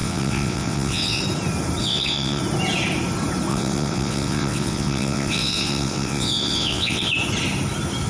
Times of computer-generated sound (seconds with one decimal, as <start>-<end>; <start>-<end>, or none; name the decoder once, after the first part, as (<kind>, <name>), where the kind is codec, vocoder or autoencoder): 0.0-1.2 (vocoder, WaveNeXt); 1.8-2.4; 3.5-7.1